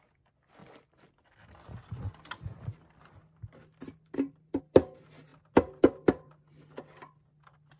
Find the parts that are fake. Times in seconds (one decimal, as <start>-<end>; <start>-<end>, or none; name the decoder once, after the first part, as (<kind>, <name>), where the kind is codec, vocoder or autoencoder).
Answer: none